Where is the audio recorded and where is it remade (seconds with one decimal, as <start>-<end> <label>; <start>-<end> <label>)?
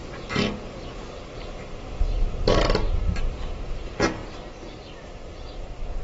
0.0-6.0 recorded